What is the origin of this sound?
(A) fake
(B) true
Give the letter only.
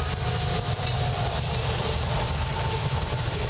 A